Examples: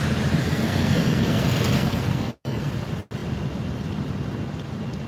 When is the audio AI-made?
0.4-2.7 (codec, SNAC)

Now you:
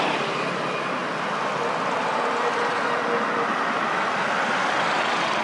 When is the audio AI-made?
none

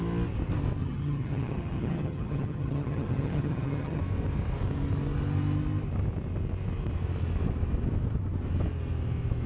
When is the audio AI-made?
0.8-4.0 (vocoder, HiFi-GAN)

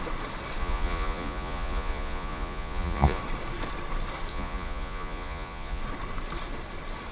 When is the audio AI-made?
0.6-3.2 (vocoder, Vocos); 4.3-5.8

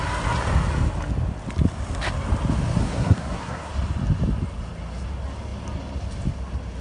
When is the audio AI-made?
2.8-3.7 (codec, SNAC)